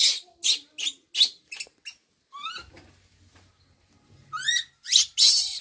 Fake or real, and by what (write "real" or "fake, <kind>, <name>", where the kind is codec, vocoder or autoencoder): real